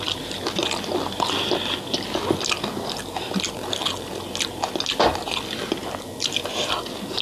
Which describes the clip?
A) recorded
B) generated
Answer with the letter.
A